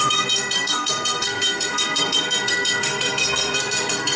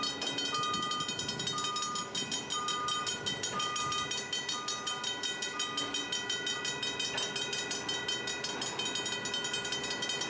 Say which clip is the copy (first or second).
first